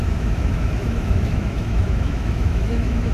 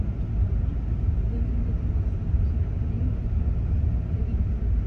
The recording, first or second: second